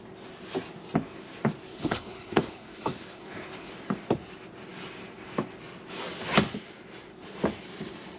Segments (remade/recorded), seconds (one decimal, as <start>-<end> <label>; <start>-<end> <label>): 0.0-1.7 recorded; 1.7-3.7 remade; 3.7-8.2 recorded